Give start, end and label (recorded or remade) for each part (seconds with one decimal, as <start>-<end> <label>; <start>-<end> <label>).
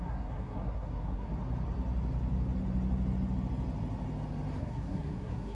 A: 0.0-1.3 remade; 1.3-4.6 recorded; 4.6-5.5 remade